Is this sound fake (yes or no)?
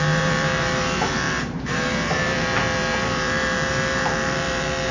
yes